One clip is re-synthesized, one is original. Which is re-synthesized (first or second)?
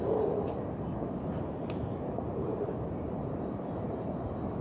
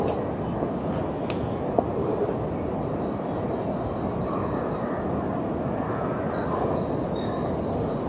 first